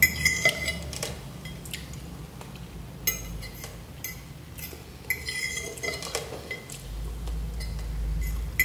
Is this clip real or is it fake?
real